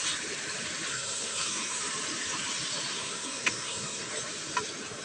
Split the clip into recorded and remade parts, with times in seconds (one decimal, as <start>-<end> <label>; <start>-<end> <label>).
0.0-0.9 recorded; 0.9-1.8 remade; 1.8-2.9 recorded; 2.9-4.1 remade; 4.1-5.0 recorded